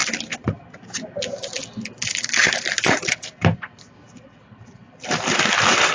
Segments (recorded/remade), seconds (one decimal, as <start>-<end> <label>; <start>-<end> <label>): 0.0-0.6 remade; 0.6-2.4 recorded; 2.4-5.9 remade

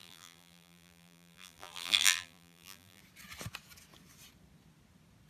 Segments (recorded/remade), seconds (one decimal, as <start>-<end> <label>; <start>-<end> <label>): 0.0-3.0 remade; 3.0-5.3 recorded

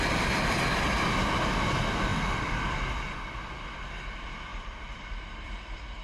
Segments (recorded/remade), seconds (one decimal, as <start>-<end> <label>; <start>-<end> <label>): 0.0-4.5 recorded; 4.5-5.5 remade; 5.5-6.0 recorded

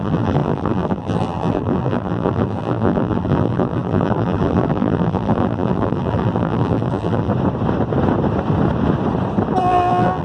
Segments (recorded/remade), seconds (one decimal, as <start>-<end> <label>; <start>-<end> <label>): 0.0-7.3 remade; 7.3-9.6 recorded; 9.6-10.2 remade

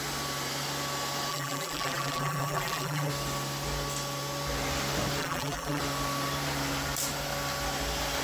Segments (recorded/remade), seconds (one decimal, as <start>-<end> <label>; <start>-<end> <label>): 0.0-1.3 recorded; 1.3-3.1 remade; 3.1-5.2 recorded; 5.2-5.8 remade; 5.8-8.2 recorded

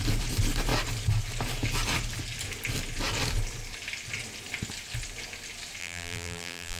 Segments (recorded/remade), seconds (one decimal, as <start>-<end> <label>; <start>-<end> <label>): 0.0-5.8 recorded; 5.8-6.8 remade

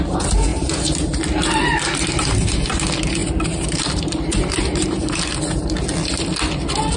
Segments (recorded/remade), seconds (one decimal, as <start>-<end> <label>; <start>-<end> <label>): 0.0-0.5 recorded; 0.5-1.2 remade; 1.2-3.2 recorded; 3.2-5.2 remade; 5.2-7.0 recorded